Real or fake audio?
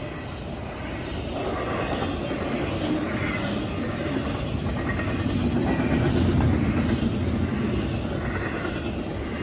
real